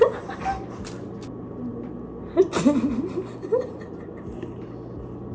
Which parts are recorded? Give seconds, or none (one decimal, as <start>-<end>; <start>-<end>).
0.0-1.7; 2.8-5.3

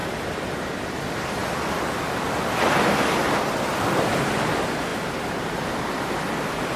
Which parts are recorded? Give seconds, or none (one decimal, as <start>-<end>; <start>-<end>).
0.0-6.8

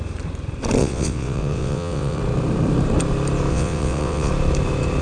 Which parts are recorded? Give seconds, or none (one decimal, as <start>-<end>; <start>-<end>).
0.0-0.8; 2.2-3.5; 4.3-5.0

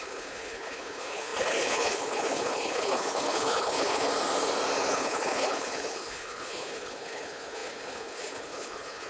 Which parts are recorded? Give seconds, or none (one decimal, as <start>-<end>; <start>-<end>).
4.1-4.9